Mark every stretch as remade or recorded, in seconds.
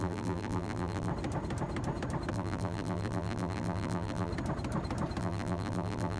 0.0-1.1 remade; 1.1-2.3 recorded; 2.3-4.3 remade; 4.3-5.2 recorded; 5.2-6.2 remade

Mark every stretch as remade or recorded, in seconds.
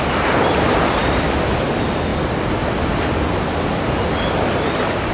0.0-2.1 remade; 2.1-5.1 recorded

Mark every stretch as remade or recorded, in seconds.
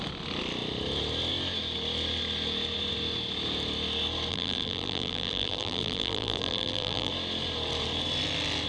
0.0-4.3 recorded; 4.3-7.1 remade; 7.1-8.7 recorded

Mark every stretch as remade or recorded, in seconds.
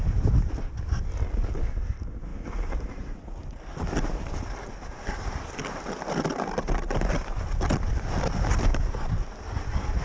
0.0-10.0 recorded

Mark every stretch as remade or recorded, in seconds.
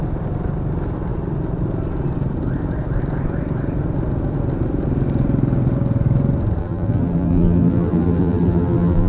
0.0-6.6 recorded; 6.6-9.1 remade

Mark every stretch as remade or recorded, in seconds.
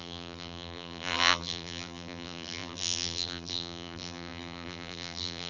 0.0-5.5 remade